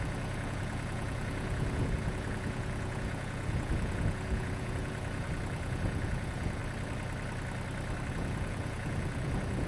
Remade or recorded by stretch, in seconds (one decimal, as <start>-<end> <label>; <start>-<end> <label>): 0.0-6.6 remade; 6.6-8.1 recorded; 8.1-9.7 remade